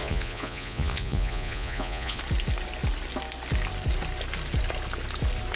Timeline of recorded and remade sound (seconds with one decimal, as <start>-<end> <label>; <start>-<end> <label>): 0.0-2.2 remade; 2.2-5.6 recorded

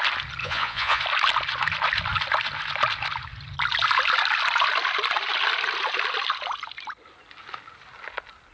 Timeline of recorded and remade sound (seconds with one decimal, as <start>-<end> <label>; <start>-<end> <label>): 0.0-0.4 recorded; 0.4-1.0 remade; 1.0-8.5 recorded

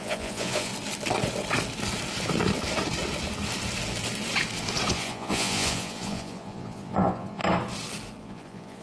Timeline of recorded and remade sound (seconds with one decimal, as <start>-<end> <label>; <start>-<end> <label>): 0.0-0.7 remade; 0.7-4.9 recorded; 4.9-7.4 remade; 7.4-8.2 recorded; 8.2-8.8 remade

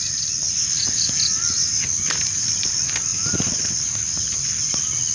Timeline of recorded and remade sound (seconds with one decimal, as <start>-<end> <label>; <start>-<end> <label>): 0.0-5.1 recorded

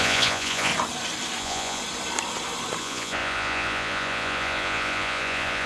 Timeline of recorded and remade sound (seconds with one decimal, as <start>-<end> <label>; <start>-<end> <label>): 0.0-0.7 remade; 0.7-1.4 recorded; 1.4-1.8 remade; 1.8-2.8 recorded; 2.8-5.7 remade

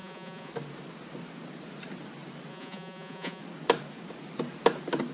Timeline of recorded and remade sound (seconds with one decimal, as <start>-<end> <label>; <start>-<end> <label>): 0.0-0.5 remade; 0.5-2.5 recorded; 2.5-3.4 remade; 3.4-5.1 recorded

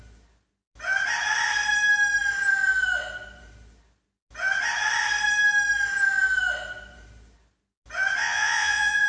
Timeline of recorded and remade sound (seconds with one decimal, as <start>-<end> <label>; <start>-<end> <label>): 0.0-8.2 recorded; 8.2-9.1 remade

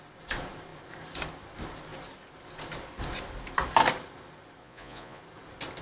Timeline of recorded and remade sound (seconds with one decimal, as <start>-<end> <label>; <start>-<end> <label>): 0.0-4.6 recorded; 4.6-5.2 remade; 5.2-5.8 recorded